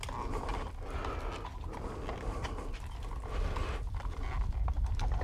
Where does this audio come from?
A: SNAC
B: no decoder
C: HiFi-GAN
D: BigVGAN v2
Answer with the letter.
B